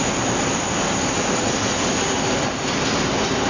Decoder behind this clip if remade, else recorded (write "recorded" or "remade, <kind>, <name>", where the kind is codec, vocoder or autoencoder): recorded